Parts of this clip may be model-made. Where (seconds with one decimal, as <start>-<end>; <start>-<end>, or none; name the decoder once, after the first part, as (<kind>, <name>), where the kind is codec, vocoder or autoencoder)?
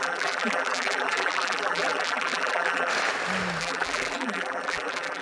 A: 0.0-2.9 (vocoder, BigVGAN v2); 3.6-5.2